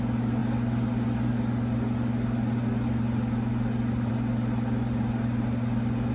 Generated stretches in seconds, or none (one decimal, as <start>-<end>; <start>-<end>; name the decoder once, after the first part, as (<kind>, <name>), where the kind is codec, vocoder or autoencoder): none